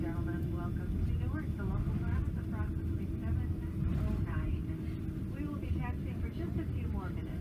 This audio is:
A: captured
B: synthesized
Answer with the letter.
A